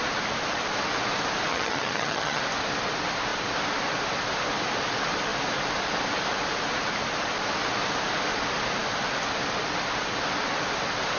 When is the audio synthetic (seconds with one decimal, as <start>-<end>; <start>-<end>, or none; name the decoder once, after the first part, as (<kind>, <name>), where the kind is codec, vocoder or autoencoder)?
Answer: 1.5-2.4 (vocoder, HiFi-GAN)